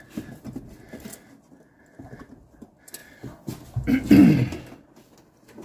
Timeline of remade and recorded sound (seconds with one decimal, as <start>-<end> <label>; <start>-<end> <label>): 0.0-5.6 recorded

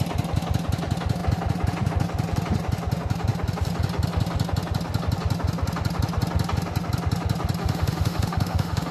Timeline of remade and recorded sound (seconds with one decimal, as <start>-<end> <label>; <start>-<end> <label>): 0.0-7.6 recorded; 7.6-8.9 remade

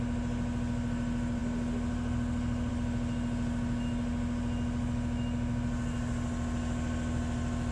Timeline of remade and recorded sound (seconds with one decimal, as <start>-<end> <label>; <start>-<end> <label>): 0.0-7.7 recorded

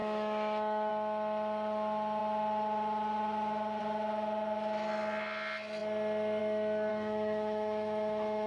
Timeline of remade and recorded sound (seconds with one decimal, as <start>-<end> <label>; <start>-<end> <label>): 0.0-0.9 remade; 0.9-6.9 recorded; 6.9-8.5 remade

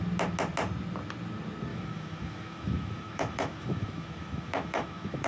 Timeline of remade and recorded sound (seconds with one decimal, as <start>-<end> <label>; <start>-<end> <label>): 0.0-1.7 recorded; 1.7-5.3 remade

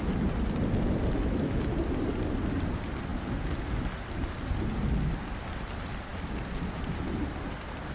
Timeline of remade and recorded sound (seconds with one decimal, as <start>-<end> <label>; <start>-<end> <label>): 0.0-7.9 recorded